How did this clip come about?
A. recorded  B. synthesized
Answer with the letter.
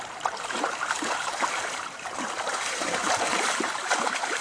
B